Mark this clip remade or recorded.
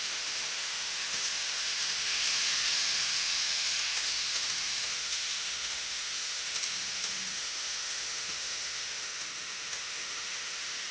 remade